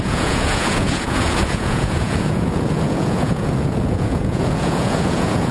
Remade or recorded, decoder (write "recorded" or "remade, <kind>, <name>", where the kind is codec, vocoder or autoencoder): remade, vocoder, Vocos